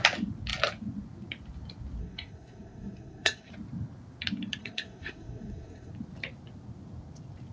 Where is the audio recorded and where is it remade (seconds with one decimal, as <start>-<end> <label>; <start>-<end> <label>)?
0.0-2.0 recorded; 2.0-3.5 remade; 3.5-4.6 recorded; 4.6-5.9 remade; 5.9-7.5 recorded